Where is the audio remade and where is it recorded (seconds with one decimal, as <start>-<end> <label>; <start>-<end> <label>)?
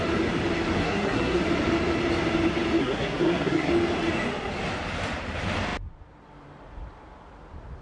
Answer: 0.0-0.8 recorded; 0.8-1.4 remade; 1.4-2.8 recorded; 2.8-3.7 remade; 3.7-7.8 recorded